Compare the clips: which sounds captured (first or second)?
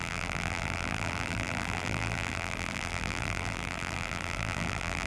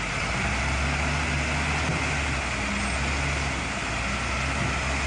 second